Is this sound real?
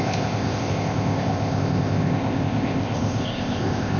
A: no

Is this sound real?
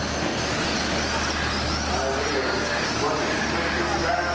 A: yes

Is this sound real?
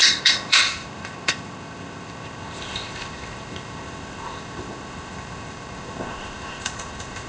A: no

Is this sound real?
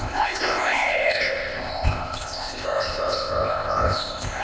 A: no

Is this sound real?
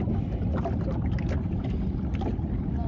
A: yes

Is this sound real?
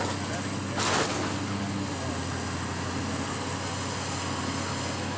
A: yes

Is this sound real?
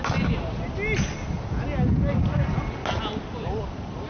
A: yes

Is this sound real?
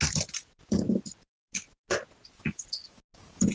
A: yes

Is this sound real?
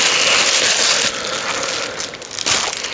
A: yes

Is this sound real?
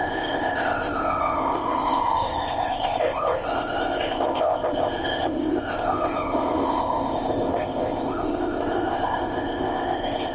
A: no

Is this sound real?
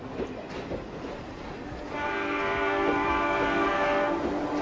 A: yes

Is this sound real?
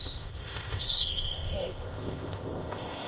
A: no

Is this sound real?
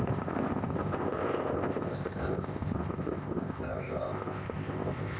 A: no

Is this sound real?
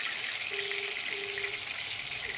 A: yes